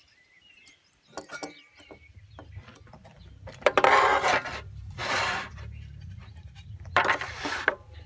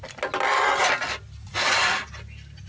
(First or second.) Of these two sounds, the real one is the second